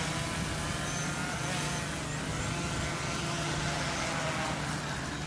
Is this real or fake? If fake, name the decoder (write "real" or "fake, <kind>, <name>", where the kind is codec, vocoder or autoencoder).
real